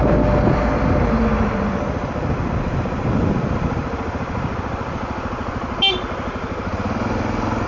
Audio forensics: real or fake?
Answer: real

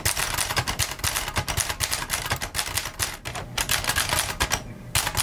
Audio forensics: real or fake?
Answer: real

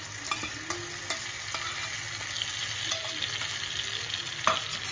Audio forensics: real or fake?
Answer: real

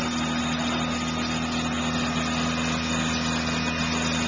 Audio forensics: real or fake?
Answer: real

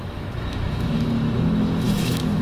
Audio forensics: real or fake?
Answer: fake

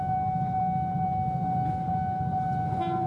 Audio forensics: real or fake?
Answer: real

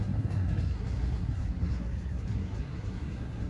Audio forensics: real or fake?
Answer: fake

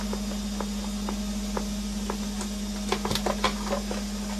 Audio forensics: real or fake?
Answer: real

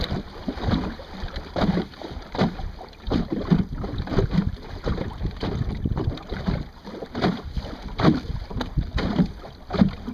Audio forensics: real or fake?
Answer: real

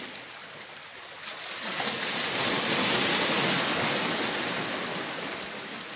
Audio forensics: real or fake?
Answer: real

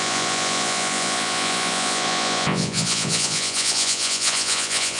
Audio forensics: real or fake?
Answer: fake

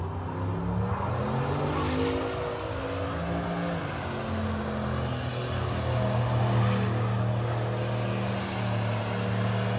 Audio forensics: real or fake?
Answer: real